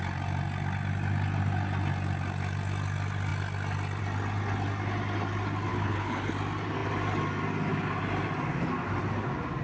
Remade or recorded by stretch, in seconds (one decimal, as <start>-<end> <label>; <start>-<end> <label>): 0.0-5.7 recorded; 5.7-6.3 remade; 6.3-9.6 recorded